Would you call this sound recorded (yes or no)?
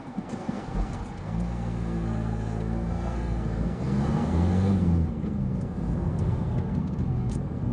no